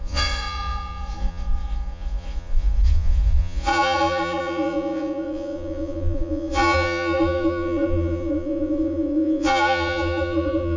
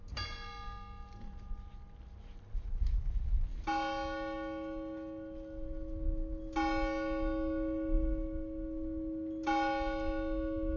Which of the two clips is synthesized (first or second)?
first